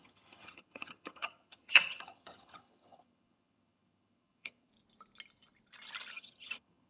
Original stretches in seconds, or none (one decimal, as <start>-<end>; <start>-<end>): 4.7-6.1